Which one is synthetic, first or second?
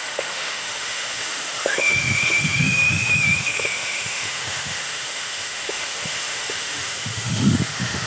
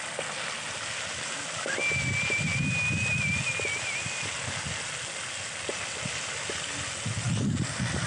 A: first